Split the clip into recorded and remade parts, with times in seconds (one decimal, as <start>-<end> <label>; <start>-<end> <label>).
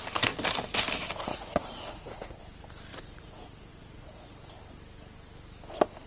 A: 0.0-1.3 recorded; 1.3-2.4 remade; 2.4-2.9 recorded; 2.9-4.6 remade; 4.6-6.1 recorded